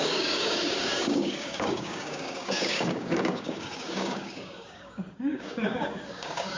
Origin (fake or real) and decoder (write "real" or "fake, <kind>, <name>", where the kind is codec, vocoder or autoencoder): fake, codec, DAC